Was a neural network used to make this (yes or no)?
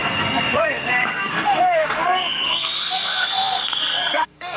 yes